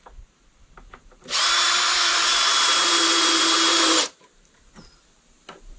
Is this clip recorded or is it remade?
remade